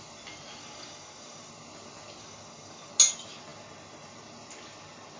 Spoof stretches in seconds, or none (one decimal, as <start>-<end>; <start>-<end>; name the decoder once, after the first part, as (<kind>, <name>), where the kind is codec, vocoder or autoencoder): 0.6-1.5 (codec, DAC); 2.2-2.9